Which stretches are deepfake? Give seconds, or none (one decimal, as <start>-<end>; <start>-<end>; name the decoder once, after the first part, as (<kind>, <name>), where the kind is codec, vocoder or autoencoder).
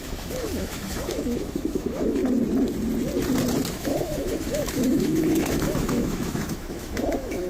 0.0-2.2 (autoencoder, DAC-VAE); 3.7-7.5